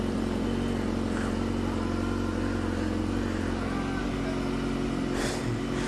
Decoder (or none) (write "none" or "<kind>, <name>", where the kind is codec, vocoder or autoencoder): none